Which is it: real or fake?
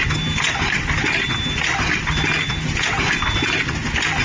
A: real